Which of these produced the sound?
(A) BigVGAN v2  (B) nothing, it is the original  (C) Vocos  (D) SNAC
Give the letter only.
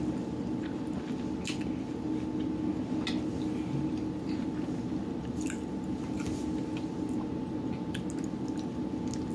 B